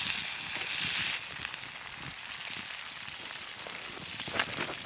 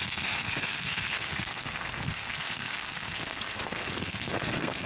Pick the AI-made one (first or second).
second